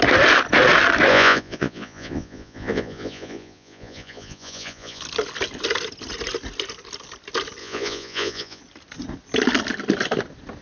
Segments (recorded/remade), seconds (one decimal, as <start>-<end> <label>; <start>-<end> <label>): 0.0-1.1 recorded; 1.1-5.0 remade; 5.0-7.6 recorded; 7.6-8.6 remade; 8.6-10.6 recorded